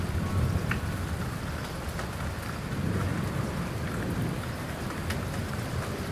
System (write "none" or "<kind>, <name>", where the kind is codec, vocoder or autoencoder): none